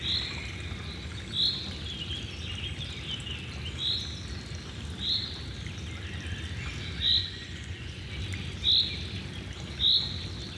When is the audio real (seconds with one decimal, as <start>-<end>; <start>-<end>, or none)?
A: 0.0-7.2; 8.1-10.6